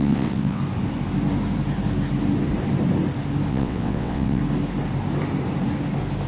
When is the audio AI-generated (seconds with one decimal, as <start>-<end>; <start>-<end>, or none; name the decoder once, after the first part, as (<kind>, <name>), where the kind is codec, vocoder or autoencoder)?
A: 0.0-0.6 (vocoder, WaveNeXt); 3.5-4.4